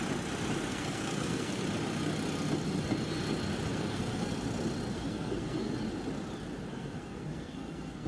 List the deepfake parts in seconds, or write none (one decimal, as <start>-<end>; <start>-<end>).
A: 0.7-1.6; 3.7-4.3; 4.9-5.7; 6.7-8.1